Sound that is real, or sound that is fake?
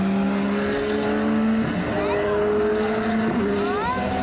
real